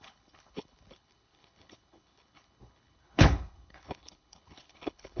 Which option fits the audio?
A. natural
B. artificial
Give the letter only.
B